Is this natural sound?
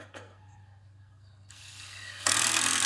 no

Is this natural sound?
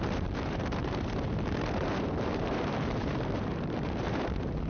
no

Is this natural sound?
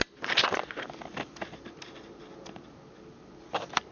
yes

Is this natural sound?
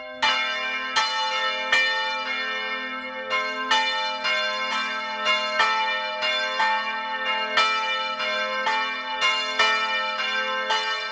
yes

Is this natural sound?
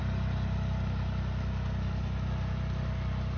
yes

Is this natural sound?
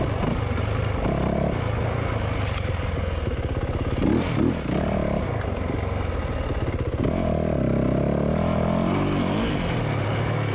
yes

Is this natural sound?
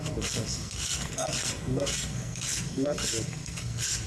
no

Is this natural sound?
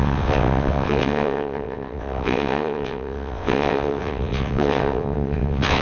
no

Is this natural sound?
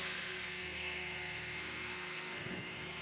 no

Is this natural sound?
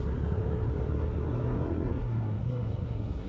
no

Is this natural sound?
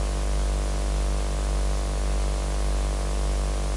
yes